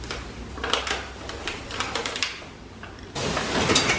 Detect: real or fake real